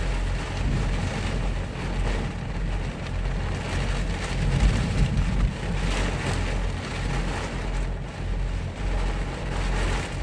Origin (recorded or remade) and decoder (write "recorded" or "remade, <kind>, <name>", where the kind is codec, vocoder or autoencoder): recorded